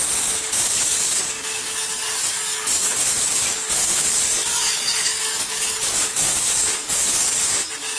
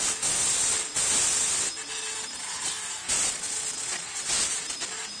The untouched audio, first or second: second